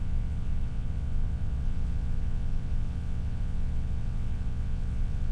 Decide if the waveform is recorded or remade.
remade